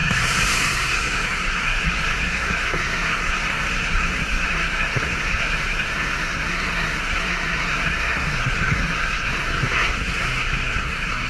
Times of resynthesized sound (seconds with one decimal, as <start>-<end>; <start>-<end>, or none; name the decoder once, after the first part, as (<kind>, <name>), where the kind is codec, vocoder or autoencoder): 0.0-11.3 (codec, SNAC)